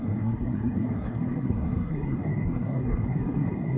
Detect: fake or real fake